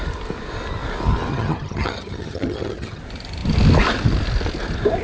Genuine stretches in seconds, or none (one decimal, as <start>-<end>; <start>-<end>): 0.0-1.3; 3.0-5.0